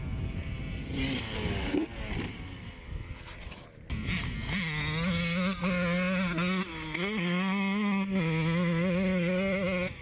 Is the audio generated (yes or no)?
no